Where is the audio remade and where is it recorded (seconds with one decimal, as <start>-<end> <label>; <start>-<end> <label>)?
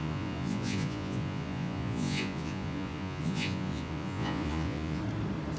0.0-5.0 remade; 5.0-5.6 recorded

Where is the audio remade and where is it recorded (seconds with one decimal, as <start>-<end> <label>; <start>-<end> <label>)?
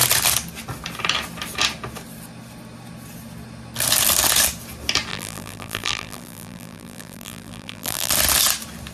0.0-5.1 recorded; 5.1-8.1 remade; 8.1-8.9 recorded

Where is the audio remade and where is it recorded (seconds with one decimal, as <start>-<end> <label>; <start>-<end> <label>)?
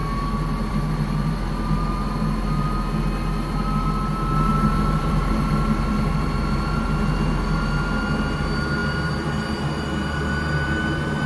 0.0-4.5 recorded; 4.5-5.9 remade; 5.9-11.3 recorded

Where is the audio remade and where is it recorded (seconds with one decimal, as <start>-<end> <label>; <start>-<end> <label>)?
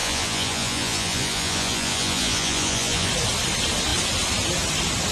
0.0-3.1 remade; 3.1-5.1 recorded